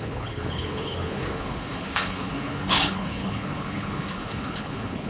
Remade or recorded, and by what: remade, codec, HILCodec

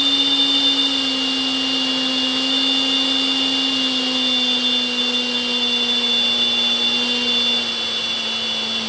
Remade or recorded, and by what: recorded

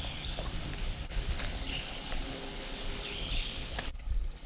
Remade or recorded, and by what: remade, codec, HILCodec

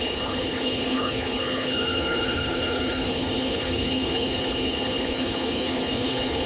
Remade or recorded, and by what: remade, codec, HILCodec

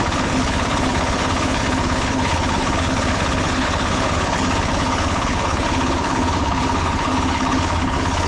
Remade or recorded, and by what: remade, codec, HILCodec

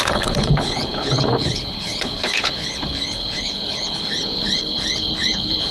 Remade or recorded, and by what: remade, codec, HILCodec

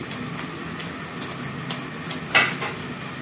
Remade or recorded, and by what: recorded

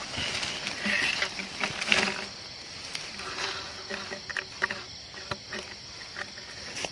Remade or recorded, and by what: recorded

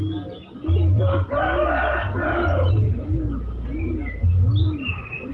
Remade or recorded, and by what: recorded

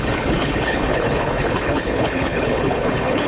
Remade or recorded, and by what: remade, codec, HILCodec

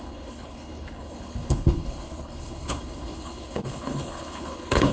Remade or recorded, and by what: remade, codec, HILCodec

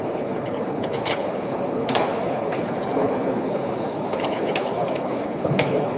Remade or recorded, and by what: remade, codec, HILCodec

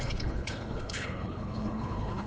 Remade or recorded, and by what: remade, codec, HILCodec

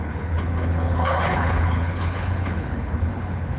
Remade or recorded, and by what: remade, codec, HILCodec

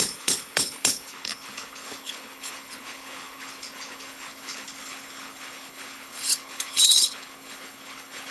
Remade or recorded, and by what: remade, codec, HILCodec